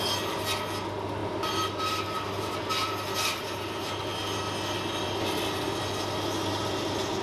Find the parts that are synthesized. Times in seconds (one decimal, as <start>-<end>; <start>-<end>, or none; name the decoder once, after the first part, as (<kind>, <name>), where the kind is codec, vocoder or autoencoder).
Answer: none